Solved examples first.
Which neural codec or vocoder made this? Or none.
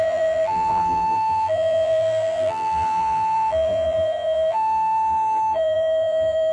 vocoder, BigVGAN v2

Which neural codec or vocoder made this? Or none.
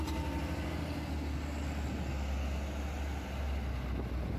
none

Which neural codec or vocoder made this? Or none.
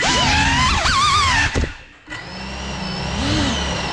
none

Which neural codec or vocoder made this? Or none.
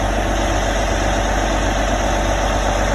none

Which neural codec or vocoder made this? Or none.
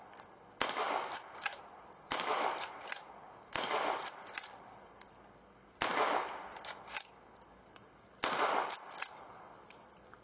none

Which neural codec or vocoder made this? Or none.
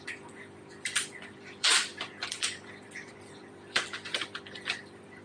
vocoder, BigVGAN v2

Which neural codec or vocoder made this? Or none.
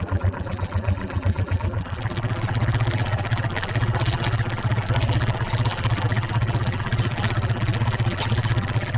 vocoder, BigVGAN v2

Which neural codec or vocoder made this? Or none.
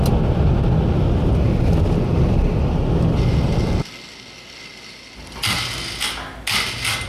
none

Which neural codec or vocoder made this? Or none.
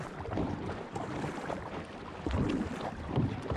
vocoder, BigVGAN v2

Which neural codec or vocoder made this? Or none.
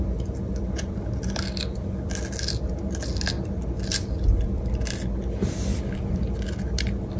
none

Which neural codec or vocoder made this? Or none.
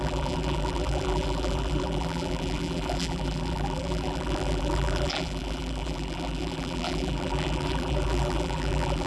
vocoder, BigVGAN v2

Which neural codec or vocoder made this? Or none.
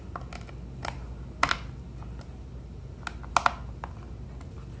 none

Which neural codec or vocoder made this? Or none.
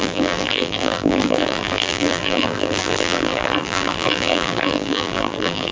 vocoder, BigVGAN v2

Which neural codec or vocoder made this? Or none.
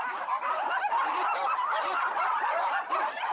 vocoder, BigVGAN v2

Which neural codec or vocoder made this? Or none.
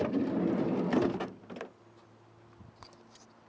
none